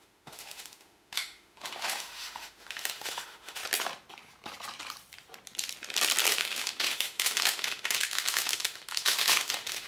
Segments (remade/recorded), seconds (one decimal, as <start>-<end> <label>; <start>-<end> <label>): 0.0-3.6 remade; 3.6-6.3 recorded; 6.3-9.9 remade